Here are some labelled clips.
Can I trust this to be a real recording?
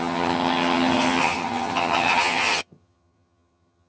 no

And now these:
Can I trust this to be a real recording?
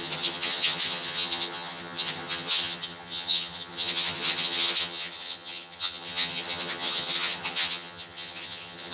no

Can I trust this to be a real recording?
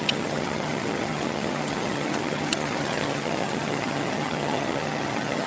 no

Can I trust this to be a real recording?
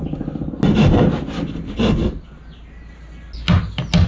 yes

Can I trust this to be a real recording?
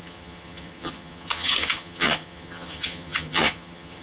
no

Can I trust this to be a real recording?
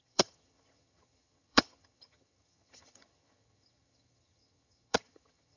no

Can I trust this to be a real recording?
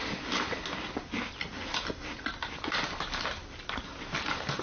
yes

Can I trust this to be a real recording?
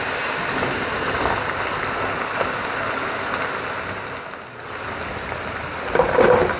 yes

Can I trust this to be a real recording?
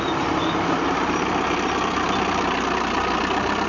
yes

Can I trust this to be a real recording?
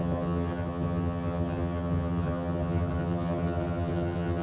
no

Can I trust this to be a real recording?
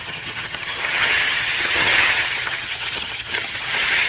no